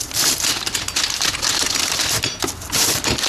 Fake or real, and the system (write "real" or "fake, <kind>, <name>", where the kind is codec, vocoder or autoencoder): real